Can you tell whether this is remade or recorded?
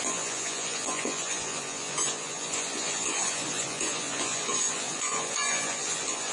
remade